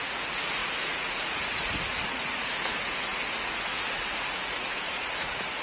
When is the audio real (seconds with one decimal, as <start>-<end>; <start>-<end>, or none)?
none